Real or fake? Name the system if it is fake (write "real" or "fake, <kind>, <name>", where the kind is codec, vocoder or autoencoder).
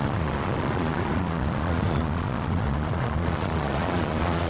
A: fake, vocoder, Vocos